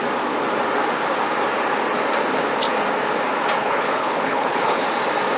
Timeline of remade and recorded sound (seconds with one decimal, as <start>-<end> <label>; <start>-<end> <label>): 0.0-3.6 recorded; 3.6-4.8 remade; 4.8-5.4 recorded